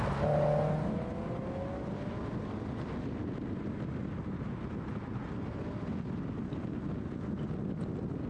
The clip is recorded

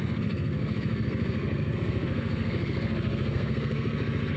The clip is remade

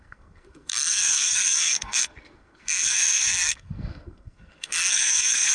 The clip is remade